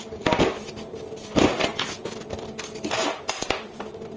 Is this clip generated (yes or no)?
yes